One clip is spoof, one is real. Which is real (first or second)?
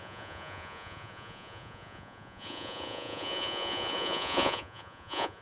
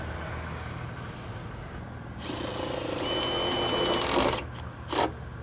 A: second